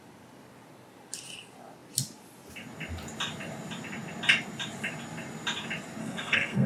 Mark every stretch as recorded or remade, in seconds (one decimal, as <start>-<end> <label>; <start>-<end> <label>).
0.0-6.0 recorded; 6.0-6.7 remade